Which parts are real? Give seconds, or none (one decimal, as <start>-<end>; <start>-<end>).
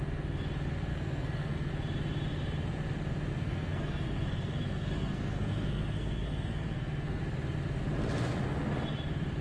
0.0-0.9; 1.7-3.3; 7.2-9.4